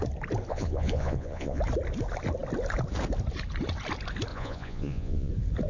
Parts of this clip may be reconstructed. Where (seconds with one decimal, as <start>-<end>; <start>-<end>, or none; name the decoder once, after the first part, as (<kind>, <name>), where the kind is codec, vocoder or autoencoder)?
0.5-1.6 (vocoder, Vocos); 4.3-5.3